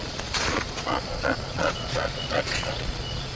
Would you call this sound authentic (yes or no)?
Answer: no